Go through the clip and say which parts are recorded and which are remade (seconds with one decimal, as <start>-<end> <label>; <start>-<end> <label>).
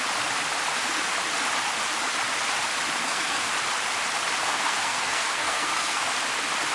0.0-3.0 recorded; 3.0-3.5 remade; 3.5-4.4 recorded; 4.4-6.0 remade; 6.0-6.7 recorded